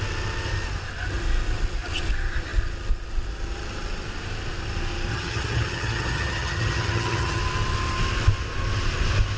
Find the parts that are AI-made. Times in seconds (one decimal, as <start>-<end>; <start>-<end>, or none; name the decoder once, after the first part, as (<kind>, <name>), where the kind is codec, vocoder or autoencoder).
5.1-7.4 (vocoder, HiFi-GAN)